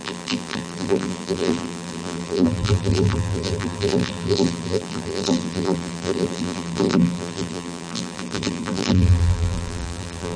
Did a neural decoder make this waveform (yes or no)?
yes